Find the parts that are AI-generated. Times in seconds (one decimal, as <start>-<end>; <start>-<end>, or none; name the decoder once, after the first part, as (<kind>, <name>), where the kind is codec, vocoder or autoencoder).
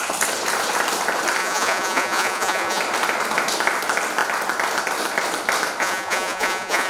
1.4-2.8 (vocoder, Vocos); 5.8-6.9